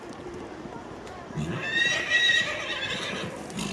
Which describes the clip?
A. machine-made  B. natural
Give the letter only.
A